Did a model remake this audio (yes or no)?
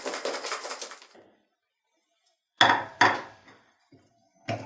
yes